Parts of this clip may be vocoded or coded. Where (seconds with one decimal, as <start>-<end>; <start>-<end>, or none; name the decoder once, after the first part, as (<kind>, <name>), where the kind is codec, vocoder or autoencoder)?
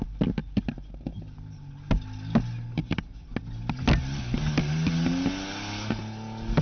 none